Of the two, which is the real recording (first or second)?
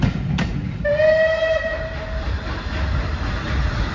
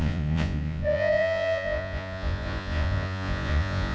first